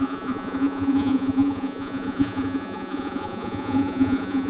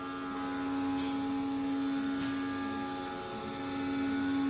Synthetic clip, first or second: first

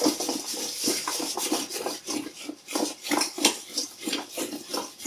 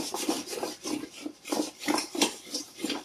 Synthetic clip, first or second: second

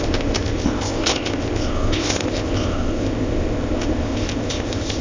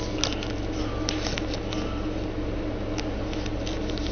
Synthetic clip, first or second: first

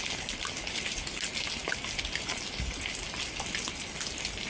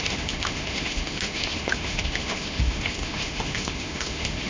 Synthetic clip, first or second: second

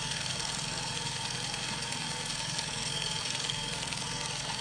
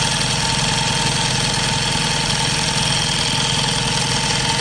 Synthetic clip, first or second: first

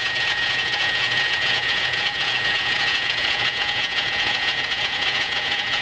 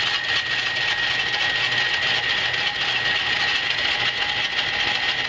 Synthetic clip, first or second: first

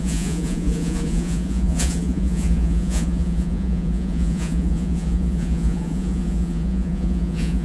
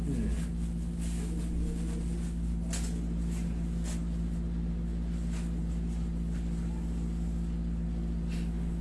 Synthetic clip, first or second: first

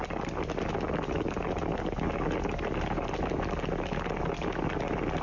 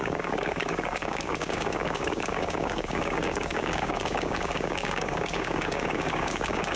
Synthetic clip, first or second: second